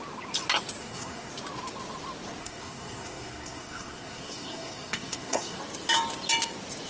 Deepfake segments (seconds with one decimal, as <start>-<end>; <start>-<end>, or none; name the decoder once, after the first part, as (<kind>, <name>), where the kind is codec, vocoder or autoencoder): 0.8-1.3 (codec, SNAC); 2.4-5.6